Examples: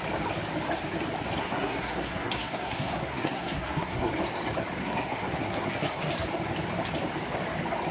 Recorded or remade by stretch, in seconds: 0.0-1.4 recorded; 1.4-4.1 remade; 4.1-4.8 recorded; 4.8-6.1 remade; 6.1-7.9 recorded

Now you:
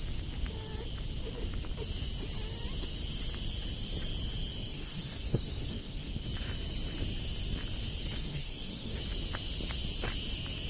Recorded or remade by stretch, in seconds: 0.0-4.7 recorded; 4.7-6.1 remade; 6.1-8.2 recorded; 8.2-9.0 remade; 9.0-10.7 recorded

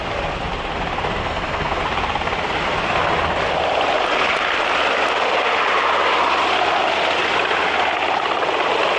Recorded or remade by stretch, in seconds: 0.0-1.2 recorded; 1.2-1.8 remade; 1.8-9.0 recorded

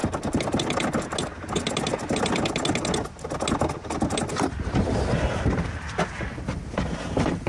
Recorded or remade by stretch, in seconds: 0.0-7.5 recorded

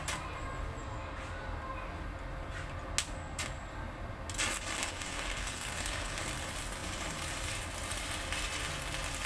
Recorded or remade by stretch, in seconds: 0.0-4.8 recorded; 4.8-6.2 remade; 6.2-9.3 recorded

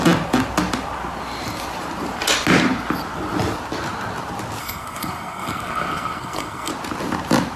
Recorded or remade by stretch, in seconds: 0.0-4.6 recorded; 4.6-6.7 remade; 6.7-7.6 recorded

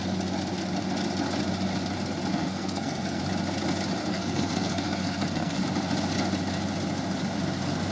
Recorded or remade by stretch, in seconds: 0.0-2.3 recorded; 2.3-3.2 remade; 3.2-4.0 recorded; 4.0-5.6 remade; 5.6-7.9 recorded